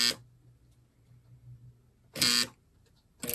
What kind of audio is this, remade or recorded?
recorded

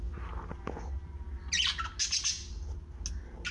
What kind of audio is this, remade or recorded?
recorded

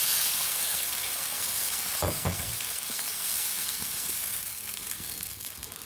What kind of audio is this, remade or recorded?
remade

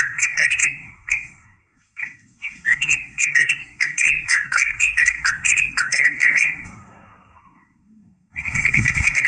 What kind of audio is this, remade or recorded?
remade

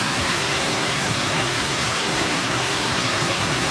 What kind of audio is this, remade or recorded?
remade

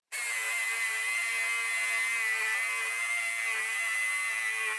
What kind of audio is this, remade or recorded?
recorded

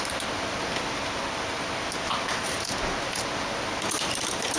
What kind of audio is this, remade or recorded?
recorded